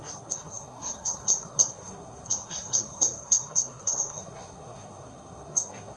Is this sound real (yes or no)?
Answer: no